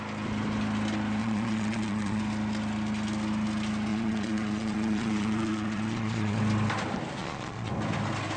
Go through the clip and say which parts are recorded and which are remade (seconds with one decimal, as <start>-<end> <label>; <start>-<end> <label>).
0.0-1.2 recorded; 1.2-2.2 remade; 2.2-3.9 recorded; 3.9-6.4 remade; 6.4-7.2 recorded; 7.2-7.7 remade; 7.7-8.4 recorded